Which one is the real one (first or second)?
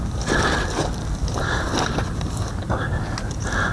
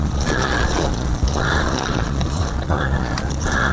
first